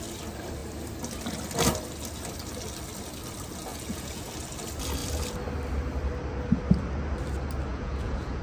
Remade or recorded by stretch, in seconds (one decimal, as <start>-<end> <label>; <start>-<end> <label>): 0.0-3.7 recorded; 3.7-4.3 remade; 4.3-7.7 recorded; 7.7-8.4 remade